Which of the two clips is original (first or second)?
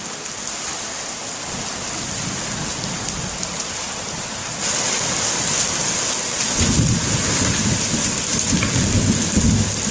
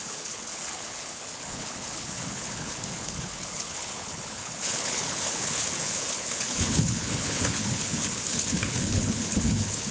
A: first